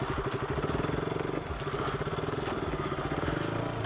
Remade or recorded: recorded